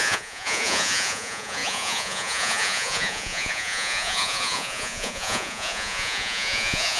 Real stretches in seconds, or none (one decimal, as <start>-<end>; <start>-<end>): none